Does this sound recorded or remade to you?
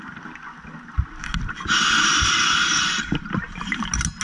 recorded